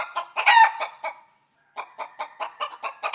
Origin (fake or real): real